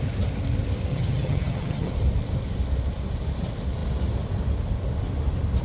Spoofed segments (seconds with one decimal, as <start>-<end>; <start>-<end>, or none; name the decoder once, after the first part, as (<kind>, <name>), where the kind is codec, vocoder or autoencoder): 0.9-1.9 (vocoder, HiFi-GAN)